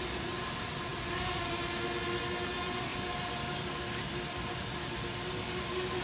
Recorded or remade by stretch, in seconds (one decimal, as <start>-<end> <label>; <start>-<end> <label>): 0.0-6.0 recorded

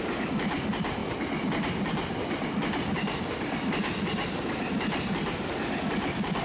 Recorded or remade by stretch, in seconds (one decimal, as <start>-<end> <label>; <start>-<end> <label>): 0.0-6.4 recorded

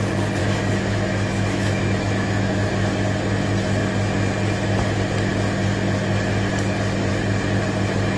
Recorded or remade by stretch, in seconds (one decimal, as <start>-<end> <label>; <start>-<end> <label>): 0.0-0.4 recorded; 0.4-2.7 remade; 2.7-8.2 recorded